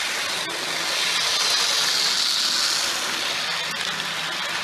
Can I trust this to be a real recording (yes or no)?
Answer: yes